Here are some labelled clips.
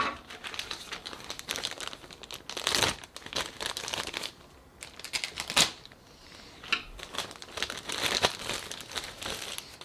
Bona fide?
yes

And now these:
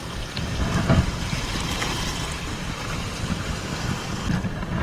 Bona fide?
yes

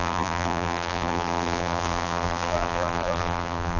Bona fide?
no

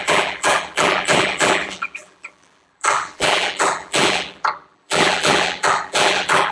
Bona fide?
no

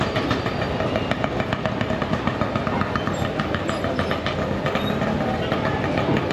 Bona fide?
yes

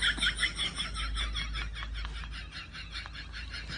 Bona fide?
yes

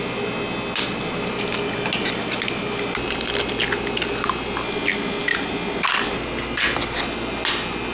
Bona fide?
yes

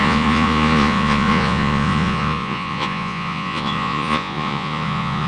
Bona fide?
no